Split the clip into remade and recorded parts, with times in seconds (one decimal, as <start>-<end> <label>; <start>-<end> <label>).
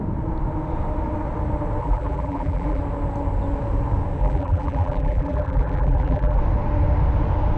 0.0-1.8 recorded; 1.8-2.8 remade; 2.8-4.2 recorded; 4.2-6.4 remade; 6.4-7.6 recorded